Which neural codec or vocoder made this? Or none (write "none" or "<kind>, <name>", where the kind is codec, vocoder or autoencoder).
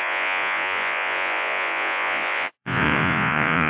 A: vocoder, Vocos